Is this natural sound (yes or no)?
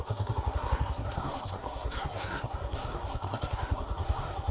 no